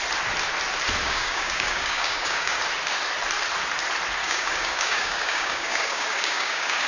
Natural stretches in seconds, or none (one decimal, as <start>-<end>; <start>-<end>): 0.0-1.0; 2.6-4.2